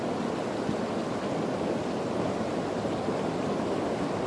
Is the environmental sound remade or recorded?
recorded